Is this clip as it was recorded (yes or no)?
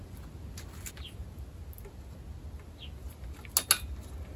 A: yes